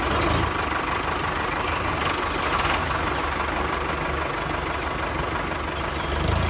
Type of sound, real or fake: real